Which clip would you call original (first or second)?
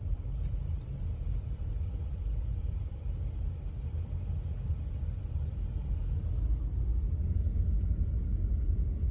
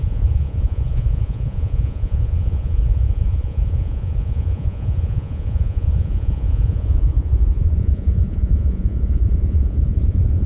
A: first